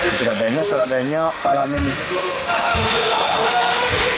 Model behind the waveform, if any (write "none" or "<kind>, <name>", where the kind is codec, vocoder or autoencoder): autoencoder, DAC-VAE